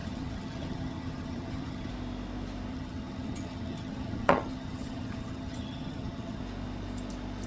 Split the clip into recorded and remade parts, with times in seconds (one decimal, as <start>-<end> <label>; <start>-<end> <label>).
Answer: 0.0-1.9 remade; 1.9-2.7 recorded; 2.7-6.4 remade; 6.4-7.5 recorded